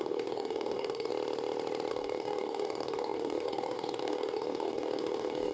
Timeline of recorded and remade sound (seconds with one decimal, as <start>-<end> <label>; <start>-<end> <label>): 0.0-1.1 remade; 1.1-1.9 recorded; 1.9-5.5 remade